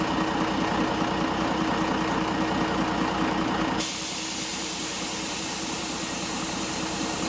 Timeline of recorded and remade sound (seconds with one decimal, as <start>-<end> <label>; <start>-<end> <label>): 0.0-4.5 recorded; 4.5-7.3 remade